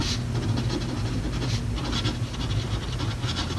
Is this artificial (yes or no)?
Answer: no